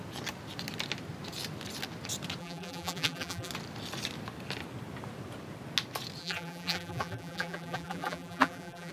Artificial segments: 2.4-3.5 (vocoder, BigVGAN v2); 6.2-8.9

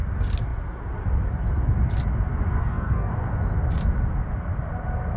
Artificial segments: 2.6-3.1 (codec, DAC)